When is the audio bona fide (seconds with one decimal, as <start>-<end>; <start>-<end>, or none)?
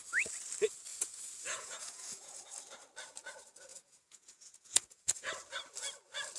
0.0-0.9; 2.4-3.7; 5.3-6.4